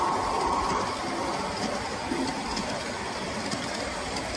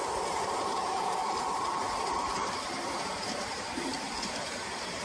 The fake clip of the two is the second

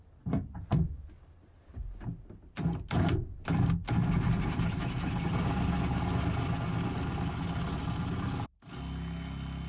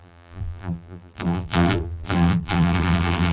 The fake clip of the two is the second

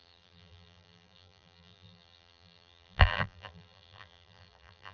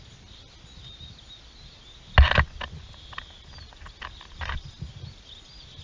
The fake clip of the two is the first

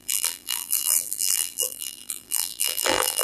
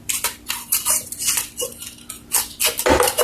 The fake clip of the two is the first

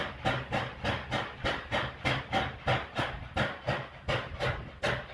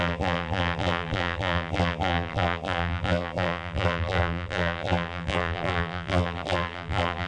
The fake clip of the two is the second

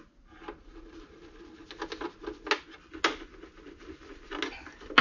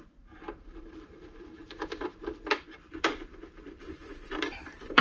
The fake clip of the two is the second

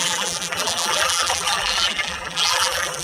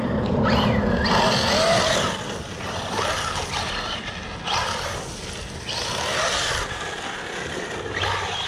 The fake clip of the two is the first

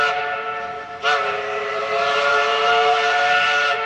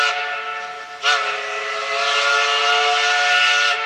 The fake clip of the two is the first